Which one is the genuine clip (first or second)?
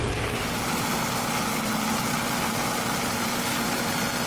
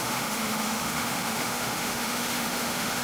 first